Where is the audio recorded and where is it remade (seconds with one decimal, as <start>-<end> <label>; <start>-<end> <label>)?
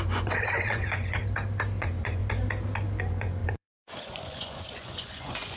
0.0-1.2 remade; 1.2-1.8 recorded; 1.8-2.2 remade; 2.2-3.0 recorded; 3.0-5.6 remade